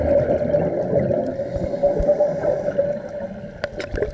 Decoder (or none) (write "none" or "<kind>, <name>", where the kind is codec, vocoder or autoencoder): none